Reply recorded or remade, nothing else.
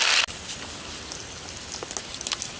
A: recorded